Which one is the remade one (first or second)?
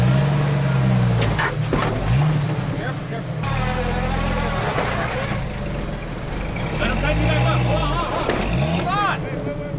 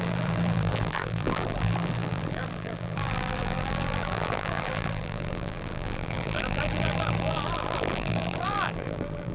second